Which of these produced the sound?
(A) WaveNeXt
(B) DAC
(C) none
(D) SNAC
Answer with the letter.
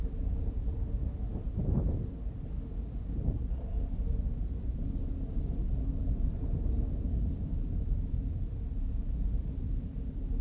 C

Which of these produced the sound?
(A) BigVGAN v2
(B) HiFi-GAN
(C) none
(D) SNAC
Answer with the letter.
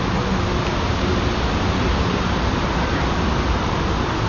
C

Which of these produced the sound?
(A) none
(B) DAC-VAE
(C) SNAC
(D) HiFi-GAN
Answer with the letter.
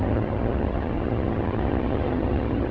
D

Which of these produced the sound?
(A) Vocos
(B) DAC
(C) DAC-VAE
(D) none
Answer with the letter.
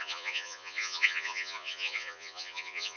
A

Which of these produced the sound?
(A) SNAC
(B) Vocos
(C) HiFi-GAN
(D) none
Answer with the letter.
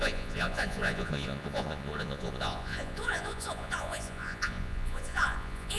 B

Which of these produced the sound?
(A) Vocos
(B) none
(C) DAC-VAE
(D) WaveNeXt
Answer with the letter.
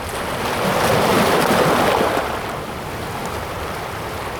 B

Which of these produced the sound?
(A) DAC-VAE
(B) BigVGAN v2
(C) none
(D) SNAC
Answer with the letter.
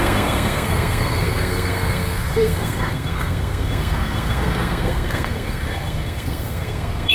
D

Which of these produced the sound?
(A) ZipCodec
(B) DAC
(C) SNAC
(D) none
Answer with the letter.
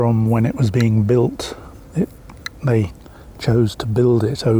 D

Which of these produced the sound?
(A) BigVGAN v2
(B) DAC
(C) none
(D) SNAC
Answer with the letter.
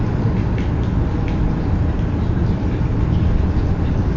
C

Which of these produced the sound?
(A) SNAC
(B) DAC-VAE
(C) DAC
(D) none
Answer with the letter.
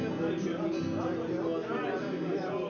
D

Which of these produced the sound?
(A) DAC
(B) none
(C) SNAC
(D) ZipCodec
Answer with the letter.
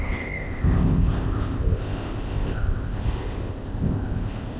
D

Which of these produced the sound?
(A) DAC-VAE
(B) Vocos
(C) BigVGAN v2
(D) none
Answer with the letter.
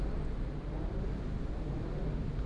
D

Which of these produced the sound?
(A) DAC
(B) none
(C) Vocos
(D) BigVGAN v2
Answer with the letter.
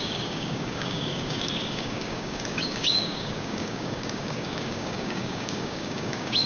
A